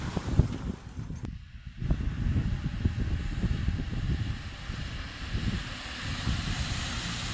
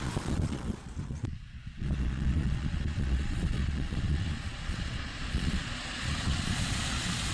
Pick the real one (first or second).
first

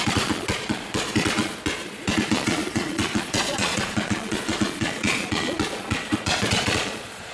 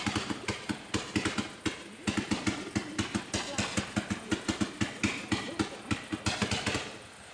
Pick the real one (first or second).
second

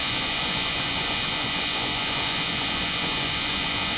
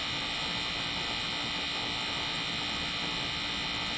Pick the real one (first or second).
second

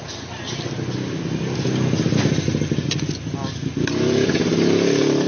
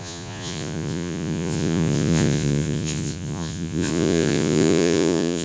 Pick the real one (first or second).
first